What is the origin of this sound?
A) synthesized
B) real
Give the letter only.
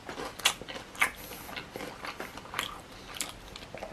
B